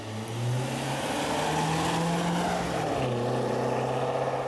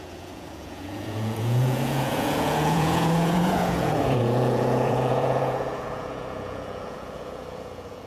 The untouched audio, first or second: first